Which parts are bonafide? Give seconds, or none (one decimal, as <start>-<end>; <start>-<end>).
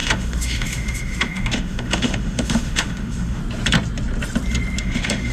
3.4-4.8